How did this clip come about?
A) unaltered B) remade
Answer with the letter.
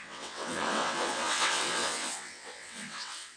B